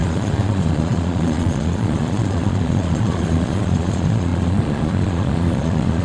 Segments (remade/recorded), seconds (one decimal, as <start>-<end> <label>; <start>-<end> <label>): 0.0-6.0 remade